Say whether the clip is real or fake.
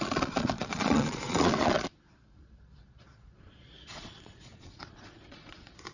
fake